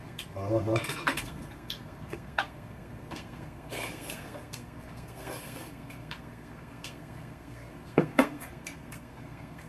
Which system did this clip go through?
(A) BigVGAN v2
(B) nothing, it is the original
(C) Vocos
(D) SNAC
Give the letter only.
D